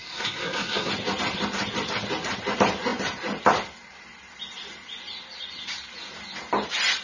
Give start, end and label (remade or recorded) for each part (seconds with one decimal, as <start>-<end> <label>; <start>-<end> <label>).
0.0-0.9 remade; 0.9-7.0 recorded